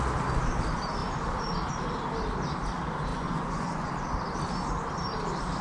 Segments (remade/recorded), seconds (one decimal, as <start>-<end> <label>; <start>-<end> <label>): 0.0-3.1 recorded; 3.1-3.9 remade; 3.9-5.6 recorded